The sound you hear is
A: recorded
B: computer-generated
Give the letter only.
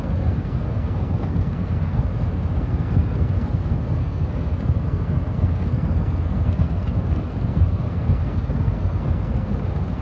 B